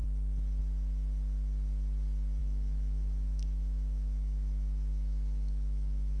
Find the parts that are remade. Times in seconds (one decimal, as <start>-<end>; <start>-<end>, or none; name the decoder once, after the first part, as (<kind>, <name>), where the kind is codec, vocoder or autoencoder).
2.4-6.2 (autoencoder, DAC-VAE)